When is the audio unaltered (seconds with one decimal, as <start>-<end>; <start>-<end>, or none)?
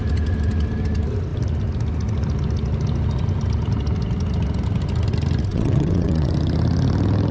0.0-5.5; 6.3-7.3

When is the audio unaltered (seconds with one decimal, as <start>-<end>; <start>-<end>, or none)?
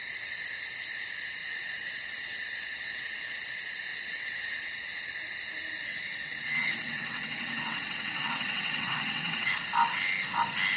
0.0-1.4; 3.4-3.9; 5.1-5.9; 9.5-10.8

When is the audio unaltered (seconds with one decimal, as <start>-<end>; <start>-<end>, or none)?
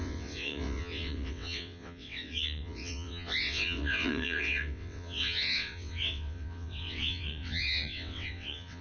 none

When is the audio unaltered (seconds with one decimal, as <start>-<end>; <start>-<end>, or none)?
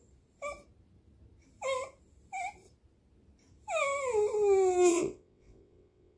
0.0-4.9